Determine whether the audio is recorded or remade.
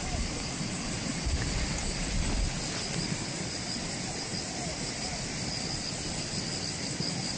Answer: recorded